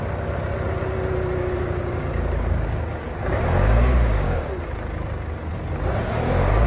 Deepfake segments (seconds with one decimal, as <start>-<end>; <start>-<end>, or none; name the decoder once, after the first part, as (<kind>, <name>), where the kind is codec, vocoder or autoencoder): 1.4-5.4 (codec, DAC); 6.1-6.7